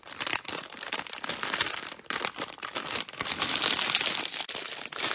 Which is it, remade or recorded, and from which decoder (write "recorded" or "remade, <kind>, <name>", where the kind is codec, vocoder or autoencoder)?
recorded